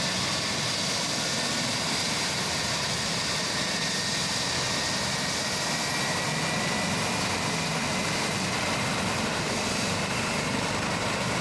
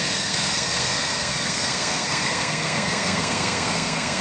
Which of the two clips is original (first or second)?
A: first